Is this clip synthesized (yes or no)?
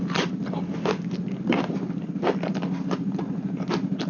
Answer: no